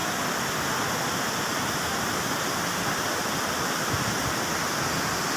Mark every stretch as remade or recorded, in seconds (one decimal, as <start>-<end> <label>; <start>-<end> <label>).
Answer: 0.0-5.4 recorded